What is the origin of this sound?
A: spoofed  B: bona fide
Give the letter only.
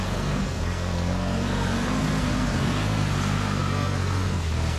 A